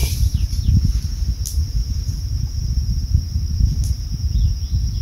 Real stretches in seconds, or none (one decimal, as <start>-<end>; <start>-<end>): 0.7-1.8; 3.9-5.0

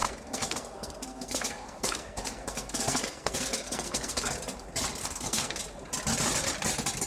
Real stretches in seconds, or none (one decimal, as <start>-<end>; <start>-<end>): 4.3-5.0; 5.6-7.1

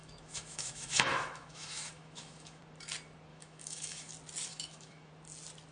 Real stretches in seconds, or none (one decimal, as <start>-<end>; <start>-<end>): 2.6-3.3; 4.1-4.5; 5.1-5.7

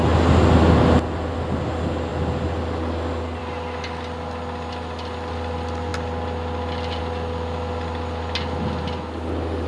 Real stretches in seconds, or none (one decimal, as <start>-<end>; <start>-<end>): 0.0-9.7

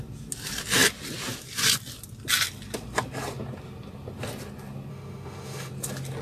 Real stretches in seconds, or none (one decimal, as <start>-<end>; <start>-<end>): 0.0-4.9; 5.7-6.2

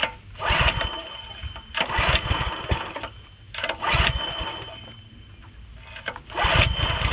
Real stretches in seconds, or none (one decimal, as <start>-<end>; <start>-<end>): 0.0-7.1